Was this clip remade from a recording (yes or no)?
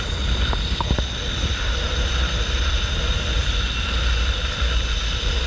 no